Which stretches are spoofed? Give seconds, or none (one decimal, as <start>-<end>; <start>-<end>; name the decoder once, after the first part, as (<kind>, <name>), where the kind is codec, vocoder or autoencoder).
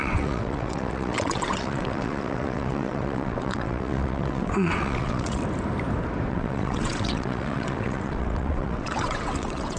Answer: 0.0-5.4 (vocoder, WaveNeXt); 6.3-9.8